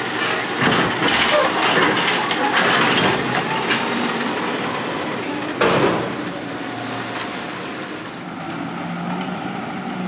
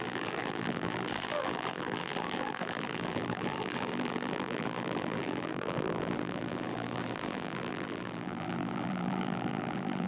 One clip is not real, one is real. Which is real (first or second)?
first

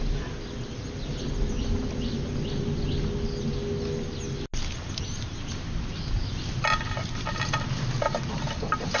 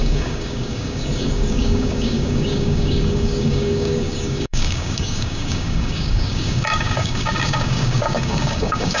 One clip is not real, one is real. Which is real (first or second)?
first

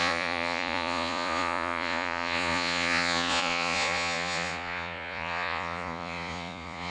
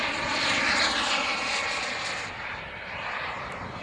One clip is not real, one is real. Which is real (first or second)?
second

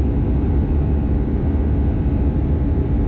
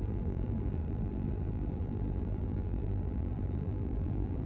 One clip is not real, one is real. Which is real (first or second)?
first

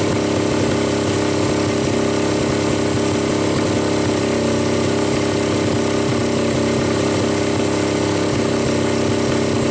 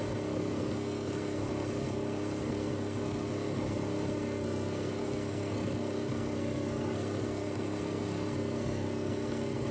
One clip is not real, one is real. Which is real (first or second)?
first